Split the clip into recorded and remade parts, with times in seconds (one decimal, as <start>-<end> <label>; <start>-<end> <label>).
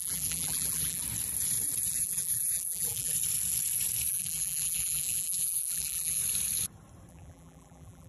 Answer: 0.0-1.0 remade; 1.0-1.9 recorded; 1.9-3.1 remade; 3.1-4.1 recorded; 4.1-6.2 remade; 6.2-7.1 recorded; 7.1-8.1 remade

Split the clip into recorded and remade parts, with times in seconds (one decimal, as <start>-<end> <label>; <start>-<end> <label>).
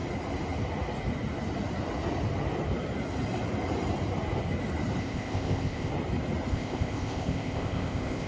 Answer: 0.0-5.0 recorded; 5.0-5.9 remade; 5.9-6.5 recorded; 6.5-8.3 remade